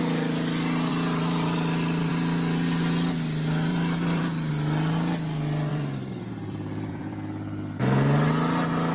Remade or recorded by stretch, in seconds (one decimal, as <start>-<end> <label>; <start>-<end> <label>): 0.0-0.9 recorded; 0.9-2.1 remade; 2.1-3.7 recorded; 3.7-4.5 remade; 4.5-5.7 recorded; 5.7-7.8 remade; 7.8-8.9 recorded